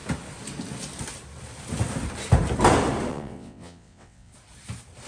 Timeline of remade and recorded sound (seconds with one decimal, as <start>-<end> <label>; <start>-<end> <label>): 0.0-3.1 recorded; 3.1-4.3 remade; 4.3-5.1 recorded